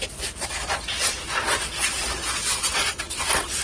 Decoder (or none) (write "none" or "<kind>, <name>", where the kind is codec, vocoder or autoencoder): none